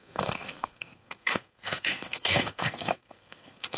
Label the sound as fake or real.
fake